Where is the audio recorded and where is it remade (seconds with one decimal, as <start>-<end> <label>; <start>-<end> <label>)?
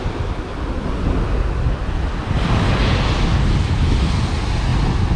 0.0-5.2 recorded